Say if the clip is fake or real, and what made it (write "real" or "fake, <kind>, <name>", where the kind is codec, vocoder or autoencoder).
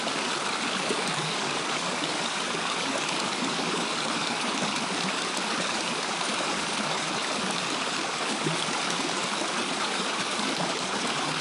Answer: fake, codec, DAC